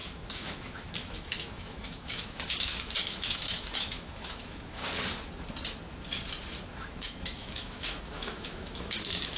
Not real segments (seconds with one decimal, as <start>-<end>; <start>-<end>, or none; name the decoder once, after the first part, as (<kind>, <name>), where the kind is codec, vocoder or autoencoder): 0.0-4.8 (autoencoder, DAC-VAE); 6.7-9.4